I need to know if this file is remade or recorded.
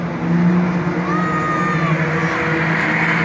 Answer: recorded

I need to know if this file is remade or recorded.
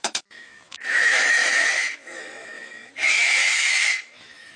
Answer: remade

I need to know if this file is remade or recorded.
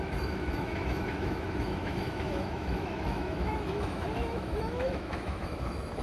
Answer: remade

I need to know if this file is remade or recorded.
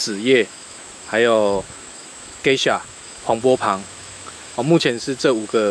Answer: remade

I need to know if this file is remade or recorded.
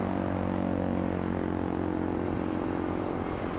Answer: recorded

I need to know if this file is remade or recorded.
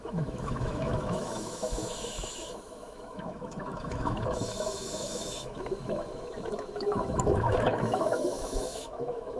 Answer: remade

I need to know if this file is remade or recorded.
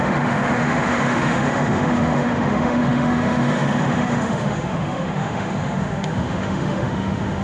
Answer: remade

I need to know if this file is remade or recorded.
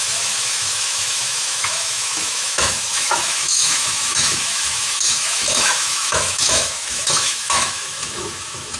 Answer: remade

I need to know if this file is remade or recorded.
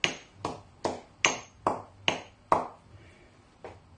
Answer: recorded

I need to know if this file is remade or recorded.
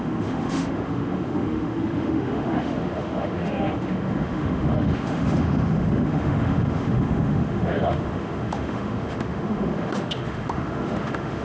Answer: remade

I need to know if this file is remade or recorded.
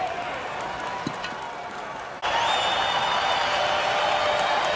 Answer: recorded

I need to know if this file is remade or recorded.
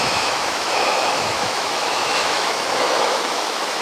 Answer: remade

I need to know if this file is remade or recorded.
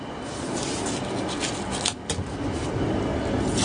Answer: recorded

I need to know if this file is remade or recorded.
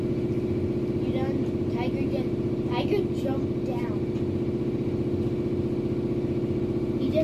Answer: recorded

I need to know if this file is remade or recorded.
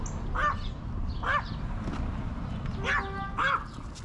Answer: recorded